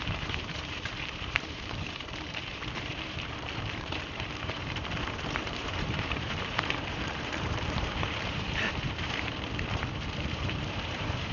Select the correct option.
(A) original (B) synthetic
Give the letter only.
B